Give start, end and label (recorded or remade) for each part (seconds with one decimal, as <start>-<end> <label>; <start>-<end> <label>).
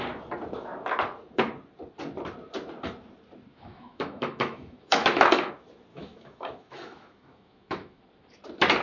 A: 0.0-3.5 recorded; 3.5-5.5 remade; 5.5-5.9 recorded; 5.9-8.0 remade; 8.0-8.8 recorded